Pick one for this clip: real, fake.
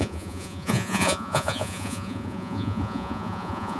fake